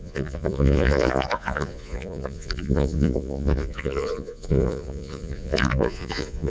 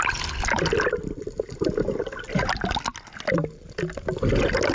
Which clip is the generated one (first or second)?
first